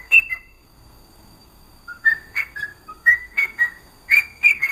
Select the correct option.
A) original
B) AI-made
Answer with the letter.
B